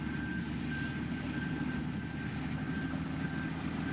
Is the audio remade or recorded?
recorded